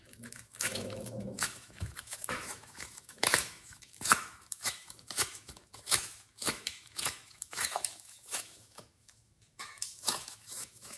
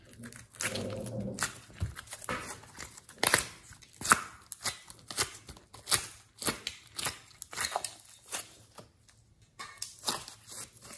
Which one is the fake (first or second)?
first